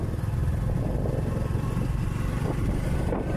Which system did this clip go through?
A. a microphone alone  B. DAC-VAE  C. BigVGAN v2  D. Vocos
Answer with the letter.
A